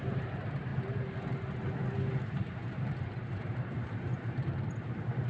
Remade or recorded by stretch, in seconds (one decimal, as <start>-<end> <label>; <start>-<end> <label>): 0.0-0.7 remade; 0.7-2.2 recorded; 2.2-5.3 remade